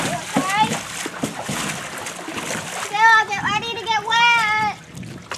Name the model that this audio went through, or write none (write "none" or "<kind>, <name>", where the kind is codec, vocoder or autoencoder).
none